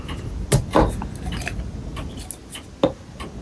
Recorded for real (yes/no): yes